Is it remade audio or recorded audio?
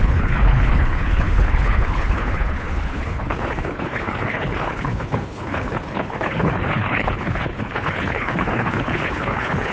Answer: remade